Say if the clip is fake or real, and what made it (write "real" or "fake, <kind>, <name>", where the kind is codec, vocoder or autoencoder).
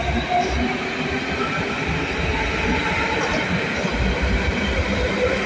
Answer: real